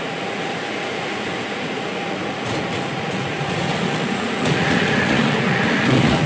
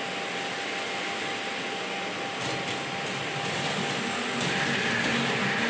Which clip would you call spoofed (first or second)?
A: first